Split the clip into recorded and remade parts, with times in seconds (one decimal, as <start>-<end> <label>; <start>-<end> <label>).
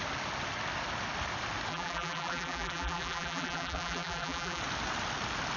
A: 0.0-1.7 recorded; 1.7-4.6 remade; 4.6-5.6 recorded